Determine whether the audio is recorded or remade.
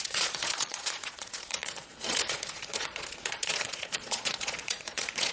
remade